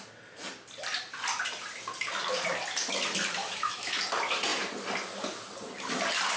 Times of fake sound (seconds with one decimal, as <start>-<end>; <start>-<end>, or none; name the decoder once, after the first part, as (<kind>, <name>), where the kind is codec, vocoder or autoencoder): 3.4-4.0 (autoencoder, DAC-VAE)